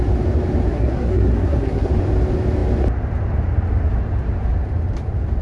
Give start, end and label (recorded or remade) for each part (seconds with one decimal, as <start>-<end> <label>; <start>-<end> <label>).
0.0-0.7 recorded; 0.7-1.9 remade; 1.9-5.4 recorded